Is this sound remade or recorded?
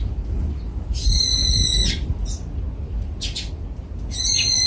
recorded